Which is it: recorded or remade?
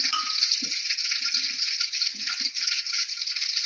remade